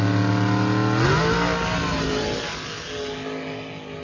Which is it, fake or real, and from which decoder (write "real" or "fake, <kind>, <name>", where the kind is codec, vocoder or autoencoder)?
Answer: real